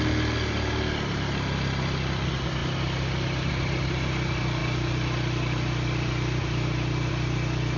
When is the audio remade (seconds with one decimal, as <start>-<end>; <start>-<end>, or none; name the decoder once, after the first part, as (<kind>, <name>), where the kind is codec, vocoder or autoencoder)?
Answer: none